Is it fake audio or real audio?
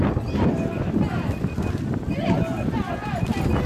real